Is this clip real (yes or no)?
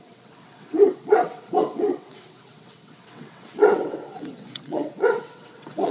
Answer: no